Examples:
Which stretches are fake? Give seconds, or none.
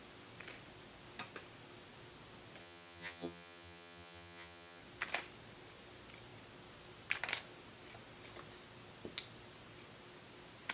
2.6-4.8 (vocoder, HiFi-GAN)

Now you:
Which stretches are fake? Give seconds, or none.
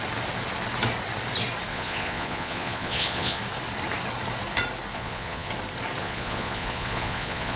1.7-3.4 (vocoder, Vocos); 4.9-5.5; 6.0-7.6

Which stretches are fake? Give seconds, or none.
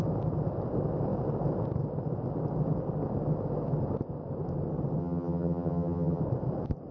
5.0-6.2 (vocoder, HiFi-GAN)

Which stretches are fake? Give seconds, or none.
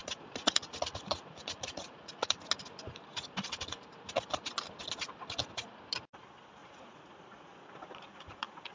0.0-2.3 (vocoder, Vocos); 3.1-3.8; 6.6-8.7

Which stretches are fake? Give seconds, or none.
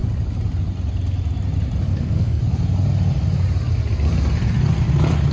1.9-2.4 (codec, SNAC)